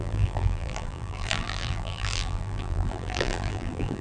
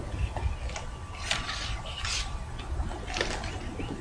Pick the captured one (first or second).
second